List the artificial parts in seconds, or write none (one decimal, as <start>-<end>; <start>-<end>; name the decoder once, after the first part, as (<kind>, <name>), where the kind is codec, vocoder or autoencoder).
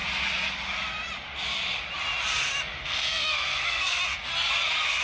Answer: 2.8-4.0 (codec, SNAC)